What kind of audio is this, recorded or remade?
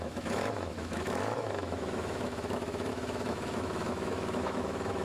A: remade